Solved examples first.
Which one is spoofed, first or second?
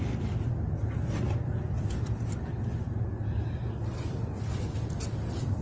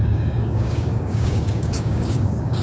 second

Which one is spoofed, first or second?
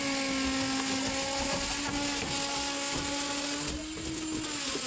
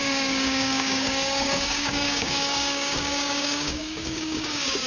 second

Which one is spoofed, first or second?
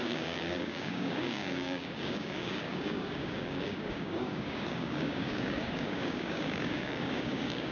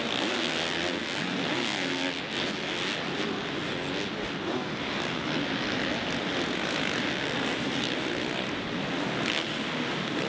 first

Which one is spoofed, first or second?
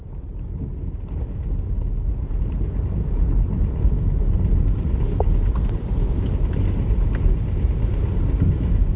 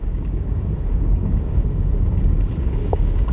second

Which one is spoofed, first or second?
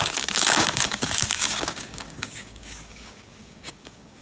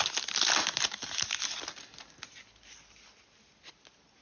first